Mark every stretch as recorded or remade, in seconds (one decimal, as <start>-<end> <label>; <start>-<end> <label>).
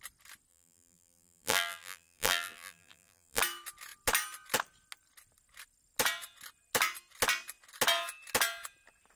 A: 0.0-0.5 recorded; 0.5-3.4 remade; 3.4-9.2 recorded